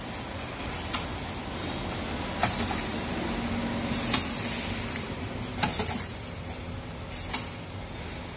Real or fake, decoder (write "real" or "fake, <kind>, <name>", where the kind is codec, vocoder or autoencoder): real